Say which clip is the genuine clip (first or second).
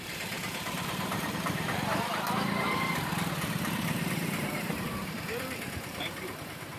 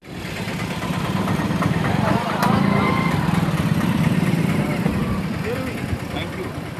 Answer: second